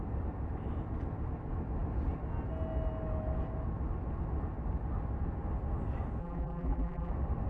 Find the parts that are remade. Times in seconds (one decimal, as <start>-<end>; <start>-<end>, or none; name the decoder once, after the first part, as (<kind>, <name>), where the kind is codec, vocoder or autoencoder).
6.2-7.1 (vocoder, BigVGAN v2)